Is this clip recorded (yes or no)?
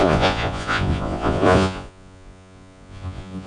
no